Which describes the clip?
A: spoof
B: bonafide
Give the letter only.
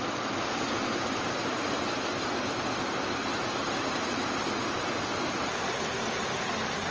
B